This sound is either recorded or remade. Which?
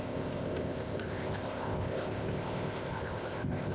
remade